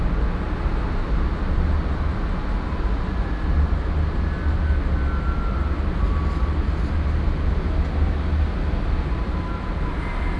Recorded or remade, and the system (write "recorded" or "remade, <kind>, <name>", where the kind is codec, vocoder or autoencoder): recorded